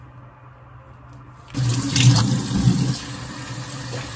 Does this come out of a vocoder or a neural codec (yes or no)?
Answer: no